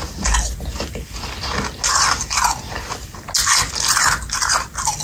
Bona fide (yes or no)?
yes